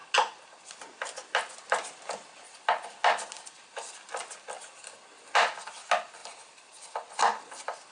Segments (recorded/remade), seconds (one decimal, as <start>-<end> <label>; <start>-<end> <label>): 0.0-7.9 recorded